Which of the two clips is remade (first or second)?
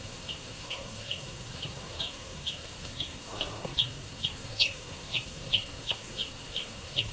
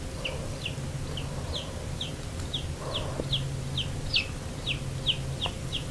first